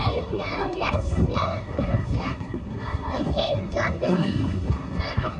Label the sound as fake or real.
fake